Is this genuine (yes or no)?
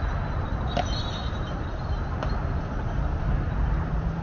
yes